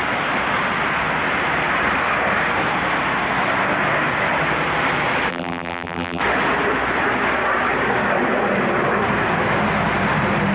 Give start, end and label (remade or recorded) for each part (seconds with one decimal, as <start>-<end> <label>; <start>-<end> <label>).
0.0-5.3 recorded; 5.3-6.2 remade; 6.2-10.5 recorded